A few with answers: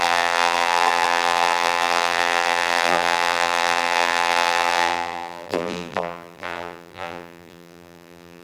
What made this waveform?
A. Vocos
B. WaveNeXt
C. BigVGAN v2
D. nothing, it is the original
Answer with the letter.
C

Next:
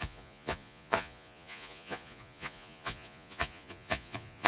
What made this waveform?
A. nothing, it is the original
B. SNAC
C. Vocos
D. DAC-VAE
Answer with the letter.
C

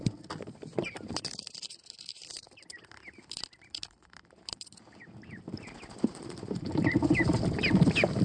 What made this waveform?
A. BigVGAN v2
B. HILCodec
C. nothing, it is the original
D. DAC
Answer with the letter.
A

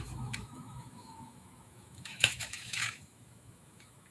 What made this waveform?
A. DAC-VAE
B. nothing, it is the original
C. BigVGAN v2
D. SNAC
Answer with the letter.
A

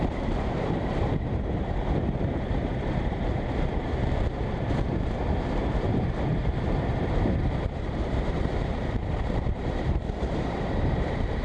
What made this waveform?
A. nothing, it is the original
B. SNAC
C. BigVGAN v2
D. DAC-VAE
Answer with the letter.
C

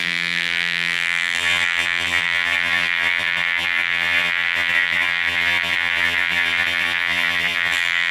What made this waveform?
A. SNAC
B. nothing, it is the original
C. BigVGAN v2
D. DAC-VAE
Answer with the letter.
C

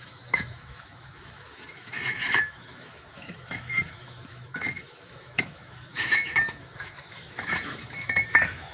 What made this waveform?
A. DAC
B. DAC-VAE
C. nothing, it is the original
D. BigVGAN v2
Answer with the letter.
B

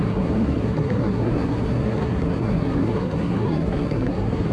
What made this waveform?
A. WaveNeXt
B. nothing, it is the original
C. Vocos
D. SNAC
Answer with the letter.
D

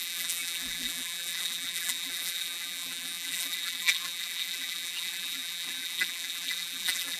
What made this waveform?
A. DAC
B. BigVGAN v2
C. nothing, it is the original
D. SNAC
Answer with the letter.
B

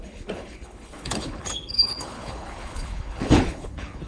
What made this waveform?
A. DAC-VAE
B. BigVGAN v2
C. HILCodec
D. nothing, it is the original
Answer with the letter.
C